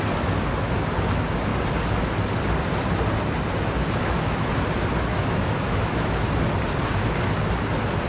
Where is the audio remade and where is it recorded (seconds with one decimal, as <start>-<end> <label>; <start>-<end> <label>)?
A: 0.0-5.1 recorded; 5.1-6.1 remade; 6.1-8.1 recorded